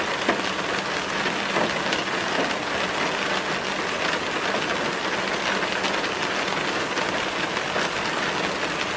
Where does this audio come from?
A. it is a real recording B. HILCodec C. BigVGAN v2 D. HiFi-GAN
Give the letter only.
A